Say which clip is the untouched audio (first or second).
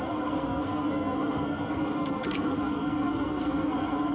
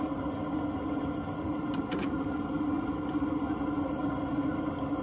second